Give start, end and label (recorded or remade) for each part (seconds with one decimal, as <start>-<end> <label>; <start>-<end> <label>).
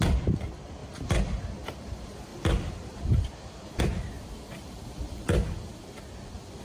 0.0-6.6 remade